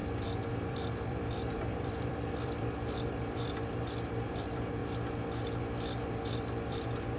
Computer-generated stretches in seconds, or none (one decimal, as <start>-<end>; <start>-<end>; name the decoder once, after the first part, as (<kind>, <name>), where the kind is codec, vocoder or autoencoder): 0.7-4.8 (vocoder, BigVGAN v2); 6.1-7.2